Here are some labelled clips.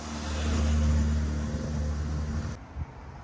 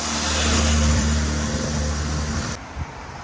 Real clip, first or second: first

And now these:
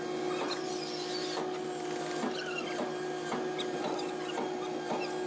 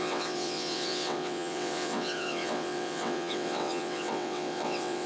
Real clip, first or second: first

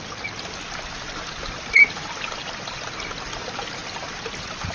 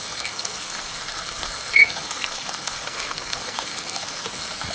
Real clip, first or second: first